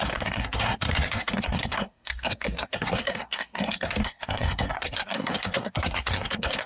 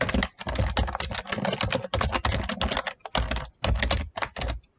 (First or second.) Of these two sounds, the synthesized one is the first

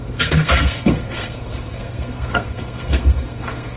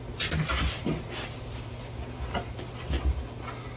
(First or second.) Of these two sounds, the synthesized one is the first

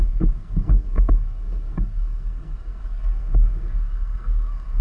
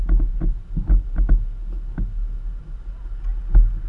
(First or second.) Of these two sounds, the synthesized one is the first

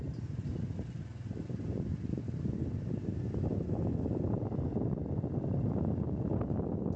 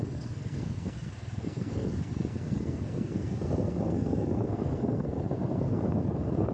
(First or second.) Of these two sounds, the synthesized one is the second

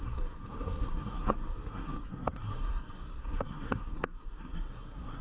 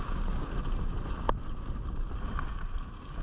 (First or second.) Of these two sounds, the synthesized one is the first